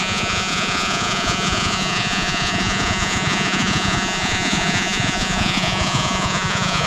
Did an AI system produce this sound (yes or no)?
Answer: yes